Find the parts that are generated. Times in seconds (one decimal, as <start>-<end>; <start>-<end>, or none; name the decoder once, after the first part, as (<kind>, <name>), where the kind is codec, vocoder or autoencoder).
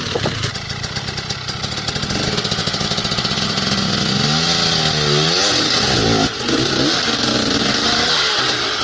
7.8-8.4 (codec, DAC)